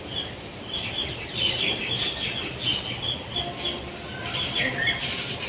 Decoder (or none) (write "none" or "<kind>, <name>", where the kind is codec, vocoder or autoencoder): vocoder, BigVGAN v2